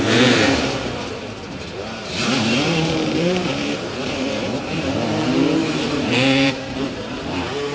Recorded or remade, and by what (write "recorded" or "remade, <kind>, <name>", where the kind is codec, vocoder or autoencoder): remade, vocoder, BigVGAN v2